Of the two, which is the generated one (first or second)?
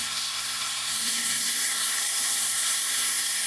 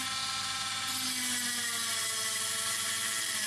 first